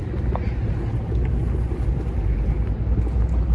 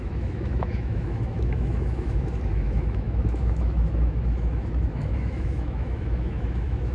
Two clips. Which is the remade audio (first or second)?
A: second